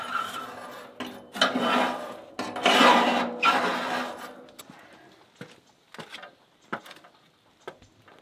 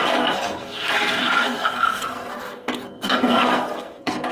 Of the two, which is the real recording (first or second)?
first